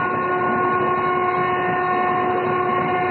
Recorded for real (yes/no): yes